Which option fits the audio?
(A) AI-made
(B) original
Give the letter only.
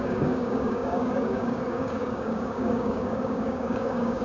A